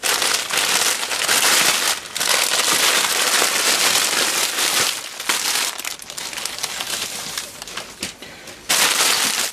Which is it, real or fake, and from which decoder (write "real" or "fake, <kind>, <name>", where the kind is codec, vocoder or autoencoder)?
real